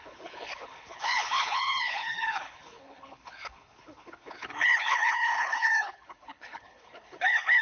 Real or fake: fake